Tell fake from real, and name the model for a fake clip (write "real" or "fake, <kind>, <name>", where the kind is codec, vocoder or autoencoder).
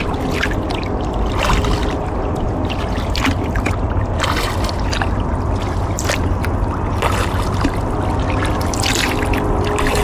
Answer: real